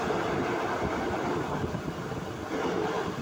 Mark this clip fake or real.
real